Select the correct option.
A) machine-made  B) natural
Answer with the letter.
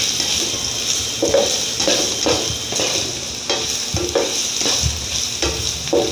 B